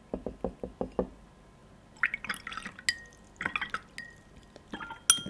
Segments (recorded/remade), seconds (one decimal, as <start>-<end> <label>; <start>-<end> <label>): 0.0-5.3 recorded